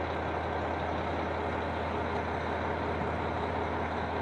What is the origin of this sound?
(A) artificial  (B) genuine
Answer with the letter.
B